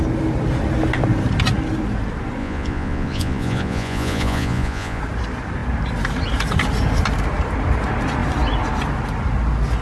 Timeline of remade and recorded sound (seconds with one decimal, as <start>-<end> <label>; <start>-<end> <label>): 0.0-2.4 recorded; 2.4-5.0 remade; 5.0-9.8 recorded